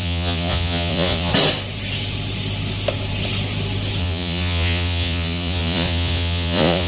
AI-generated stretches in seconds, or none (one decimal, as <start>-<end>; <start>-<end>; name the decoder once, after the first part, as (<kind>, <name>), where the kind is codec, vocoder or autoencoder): 0.0-1.3 (vocoder, Vocos); 4.0-6.9